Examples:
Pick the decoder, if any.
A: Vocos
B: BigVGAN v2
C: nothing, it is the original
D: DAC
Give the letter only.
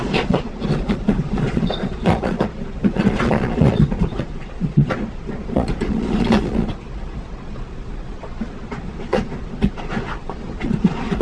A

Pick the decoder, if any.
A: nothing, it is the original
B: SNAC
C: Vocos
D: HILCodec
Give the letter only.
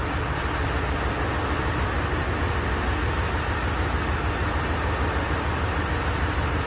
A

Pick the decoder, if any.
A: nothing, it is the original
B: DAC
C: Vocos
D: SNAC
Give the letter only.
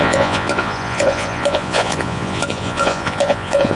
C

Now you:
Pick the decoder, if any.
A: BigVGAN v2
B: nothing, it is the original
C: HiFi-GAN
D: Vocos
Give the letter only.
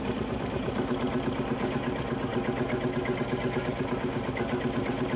B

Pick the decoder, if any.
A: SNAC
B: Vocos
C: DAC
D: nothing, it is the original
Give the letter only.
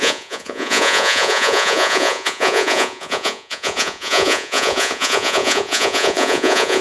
B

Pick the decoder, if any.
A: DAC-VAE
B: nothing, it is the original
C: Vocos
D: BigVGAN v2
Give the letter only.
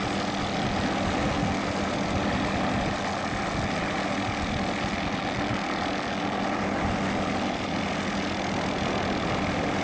B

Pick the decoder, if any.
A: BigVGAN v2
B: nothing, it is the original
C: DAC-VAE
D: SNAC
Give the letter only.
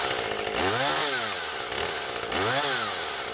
B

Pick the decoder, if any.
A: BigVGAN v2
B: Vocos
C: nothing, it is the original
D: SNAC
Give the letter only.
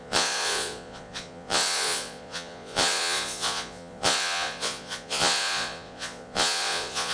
B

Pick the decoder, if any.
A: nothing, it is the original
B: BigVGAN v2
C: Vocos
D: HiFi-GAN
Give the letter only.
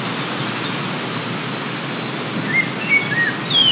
A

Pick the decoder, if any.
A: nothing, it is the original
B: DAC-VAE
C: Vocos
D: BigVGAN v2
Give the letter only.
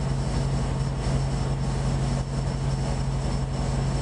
A